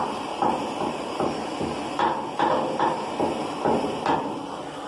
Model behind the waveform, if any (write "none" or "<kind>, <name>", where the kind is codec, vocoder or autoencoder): none